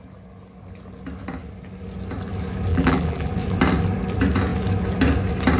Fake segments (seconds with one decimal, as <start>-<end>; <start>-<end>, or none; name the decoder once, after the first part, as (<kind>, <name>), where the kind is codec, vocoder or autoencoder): 2.7-3.3 (vocoder, BigVGAN v2)